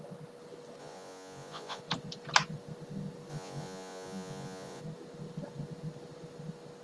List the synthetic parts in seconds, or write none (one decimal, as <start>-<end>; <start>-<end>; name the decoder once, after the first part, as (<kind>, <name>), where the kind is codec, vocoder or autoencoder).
0.8-1.8 (vocoder, Vocos); 3.3-4.8